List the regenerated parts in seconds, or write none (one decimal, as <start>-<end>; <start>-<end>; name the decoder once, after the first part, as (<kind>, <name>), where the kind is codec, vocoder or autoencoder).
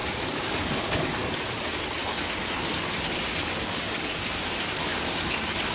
0.0-1.3 (codec, DAC); 2.4-2.9; 3.4-4.2; 4.9-5.7